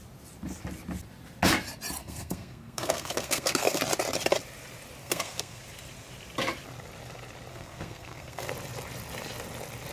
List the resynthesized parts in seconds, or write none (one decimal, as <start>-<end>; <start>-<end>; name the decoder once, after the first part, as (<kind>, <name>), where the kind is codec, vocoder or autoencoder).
2.0-3.8 (codec, SNAC); 5.0-5.6; 7.5-8.5